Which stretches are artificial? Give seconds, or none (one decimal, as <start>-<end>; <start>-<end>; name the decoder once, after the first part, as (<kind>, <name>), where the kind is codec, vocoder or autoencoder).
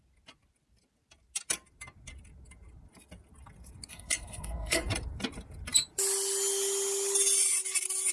3.9-4.8 (codec, SNAC)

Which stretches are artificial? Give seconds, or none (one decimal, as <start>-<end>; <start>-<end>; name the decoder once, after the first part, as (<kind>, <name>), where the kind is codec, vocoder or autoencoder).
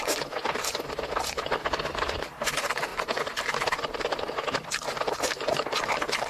none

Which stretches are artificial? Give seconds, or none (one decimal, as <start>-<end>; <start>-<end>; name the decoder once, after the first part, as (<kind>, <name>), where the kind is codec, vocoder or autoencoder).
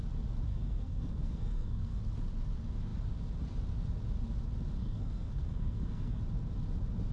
0.5-2.0 (codec, SNAC); 4.8-6.2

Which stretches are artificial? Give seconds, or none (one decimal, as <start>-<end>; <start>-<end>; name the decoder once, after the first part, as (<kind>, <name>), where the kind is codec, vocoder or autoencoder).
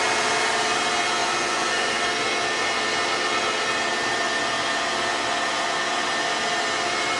1.2-2.0 (vocoder, Vocos)